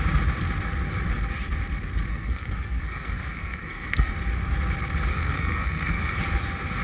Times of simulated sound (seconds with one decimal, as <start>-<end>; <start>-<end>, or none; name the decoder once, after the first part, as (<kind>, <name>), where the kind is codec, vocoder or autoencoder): 2.1-4.1 (codec, SNAC); 5.1-6.2